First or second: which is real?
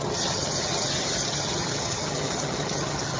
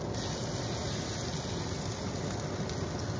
second